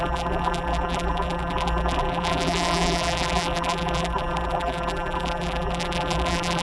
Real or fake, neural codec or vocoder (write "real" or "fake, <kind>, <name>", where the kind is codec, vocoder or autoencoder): fake, vocoder, BigVGAN v2